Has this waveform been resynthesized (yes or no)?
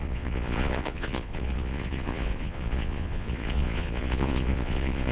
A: yes